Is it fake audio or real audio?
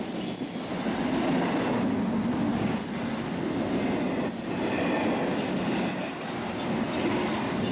real